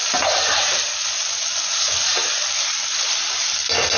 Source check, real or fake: real